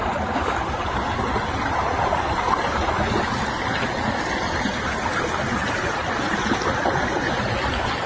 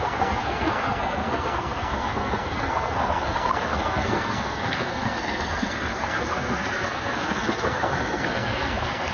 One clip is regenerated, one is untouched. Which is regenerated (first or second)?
second